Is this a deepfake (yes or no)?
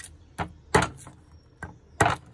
no